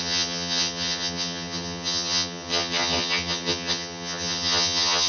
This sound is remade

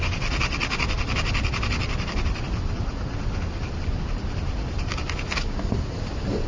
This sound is recorded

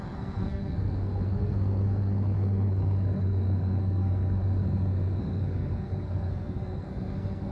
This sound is remade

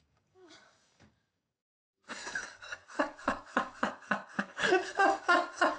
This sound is remade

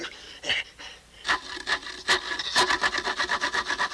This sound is recorded